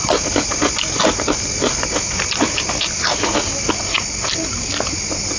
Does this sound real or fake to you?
real